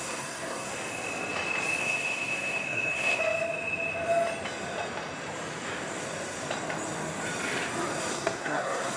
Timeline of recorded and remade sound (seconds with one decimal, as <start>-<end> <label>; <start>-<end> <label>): 0.0-0.7 remade; 0.7-1.8 recorded; 1.8-3.2 remade; 3.2-8.1 recorded; 8.1-9.0 remade